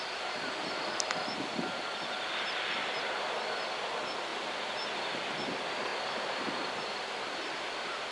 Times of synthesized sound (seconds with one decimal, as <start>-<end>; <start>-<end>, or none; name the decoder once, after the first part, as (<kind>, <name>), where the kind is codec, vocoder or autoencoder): none